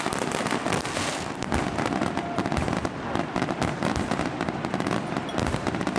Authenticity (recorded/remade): remade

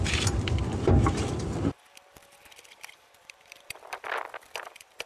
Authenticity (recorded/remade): remade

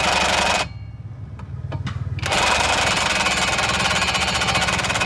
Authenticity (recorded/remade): recorded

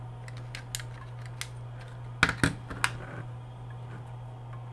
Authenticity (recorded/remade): recorded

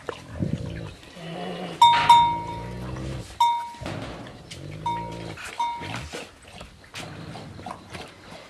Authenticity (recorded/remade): recorded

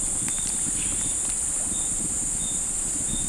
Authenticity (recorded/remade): remade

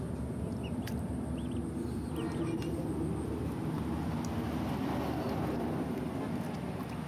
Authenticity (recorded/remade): recorded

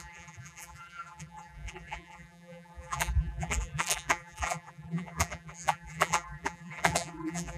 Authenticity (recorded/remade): remade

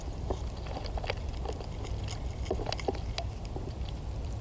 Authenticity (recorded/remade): recorded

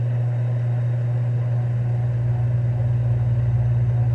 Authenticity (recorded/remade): recorded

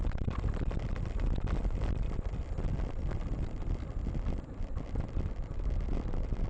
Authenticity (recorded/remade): recorded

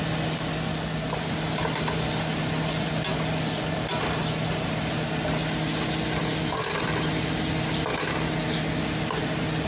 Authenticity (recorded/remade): recorded